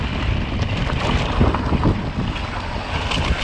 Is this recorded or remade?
recorded